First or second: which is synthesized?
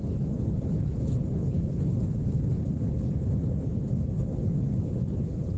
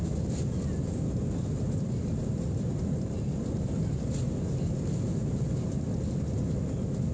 first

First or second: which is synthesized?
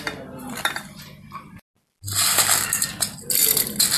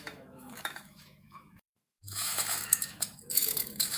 second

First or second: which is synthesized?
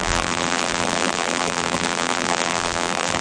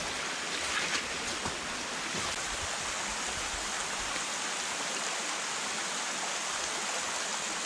first